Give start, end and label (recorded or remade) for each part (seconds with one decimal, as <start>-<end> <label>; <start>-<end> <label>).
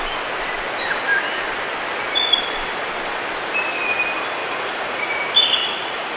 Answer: 0.0-4.4 recorded; 4.4-5.1 remade; 5.1-5.6 recorded; 5.6-6.2 remade